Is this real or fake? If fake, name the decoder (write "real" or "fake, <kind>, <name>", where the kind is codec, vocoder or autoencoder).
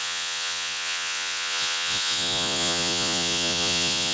fake, vocoder, Vocos